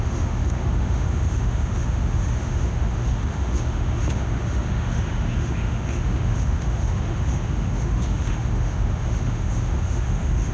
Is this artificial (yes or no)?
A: yes